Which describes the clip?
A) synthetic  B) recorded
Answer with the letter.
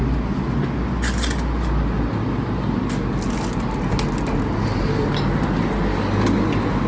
B